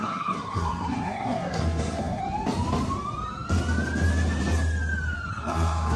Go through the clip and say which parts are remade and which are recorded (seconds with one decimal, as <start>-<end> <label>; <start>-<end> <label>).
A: 0.0-2.2 remade; 2.2-5.3 recorded; 5.3-6.0 remade